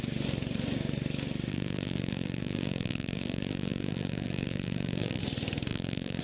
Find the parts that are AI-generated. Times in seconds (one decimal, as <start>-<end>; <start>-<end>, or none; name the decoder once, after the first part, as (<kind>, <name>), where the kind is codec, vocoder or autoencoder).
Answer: 1.5-5.2 (vocoder, BigVGAN v2); 5.7-6.2

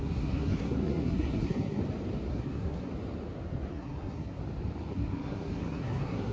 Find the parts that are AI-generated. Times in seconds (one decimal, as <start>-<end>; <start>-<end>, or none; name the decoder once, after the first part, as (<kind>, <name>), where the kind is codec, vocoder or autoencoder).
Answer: 0.0-1.8 (codec, SNAC); 2.3-2.9; 3.7-4.4; 4.9-6.3

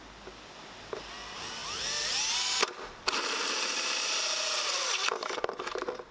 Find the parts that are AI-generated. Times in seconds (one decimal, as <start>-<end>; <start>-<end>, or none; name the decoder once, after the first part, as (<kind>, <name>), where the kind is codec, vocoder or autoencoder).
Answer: none

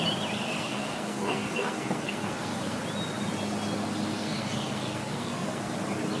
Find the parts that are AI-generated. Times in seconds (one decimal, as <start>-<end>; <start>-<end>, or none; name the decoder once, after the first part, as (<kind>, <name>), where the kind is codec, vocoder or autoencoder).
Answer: 0.5-2.8 (codec, SNAC); 4.1-5.7

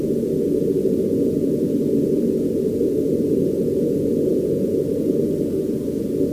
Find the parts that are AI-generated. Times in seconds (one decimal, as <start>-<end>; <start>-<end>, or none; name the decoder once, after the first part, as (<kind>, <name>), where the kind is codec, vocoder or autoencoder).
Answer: none

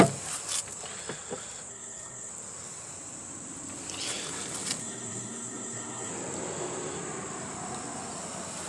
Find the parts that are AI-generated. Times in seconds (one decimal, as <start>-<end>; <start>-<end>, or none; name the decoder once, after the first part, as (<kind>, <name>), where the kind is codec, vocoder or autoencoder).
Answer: 1.7-2.3 (codec, SNAC); 4.8-6.1

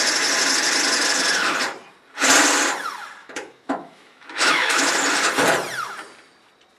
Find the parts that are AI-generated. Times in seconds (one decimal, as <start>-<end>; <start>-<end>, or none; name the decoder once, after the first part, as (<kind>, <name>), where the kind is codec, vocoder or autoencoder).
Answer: 3.2-4.9 (autoencoder, DAC-VAE)